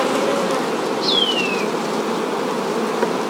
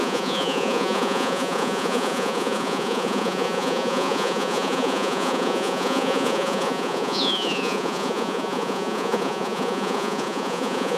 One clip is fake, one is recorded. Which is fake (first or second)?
second